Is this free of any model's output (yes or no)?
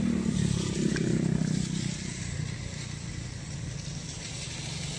yes